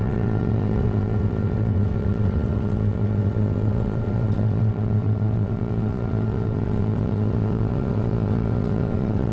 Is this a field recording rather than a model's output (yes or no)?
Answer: no